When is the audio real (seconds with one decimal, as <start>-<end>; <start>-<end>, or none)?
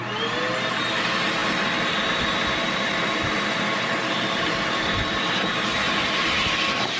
0.0-7.0